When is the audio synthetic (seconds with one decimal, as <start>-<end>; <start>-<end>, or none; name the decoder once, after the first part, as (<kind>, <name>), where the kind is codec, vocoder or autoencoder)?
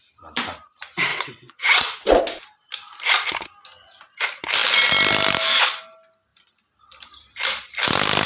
1.1-2.2 (vocoder, WaveNeXt)